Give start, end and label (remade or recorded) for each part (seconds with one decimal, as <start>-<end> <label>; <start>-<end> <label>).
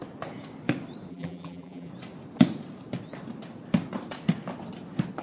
0.0-1.1 recorded; 1.1-1.9 remade; 1.9-5.2 recorded